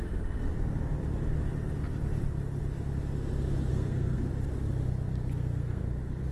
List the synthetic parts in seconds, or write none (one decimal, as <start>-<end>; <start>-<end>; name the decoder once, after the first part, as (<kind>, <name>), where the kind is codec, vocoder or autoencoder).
3.7-4.3 (codec, SNAC); 5.3-5.8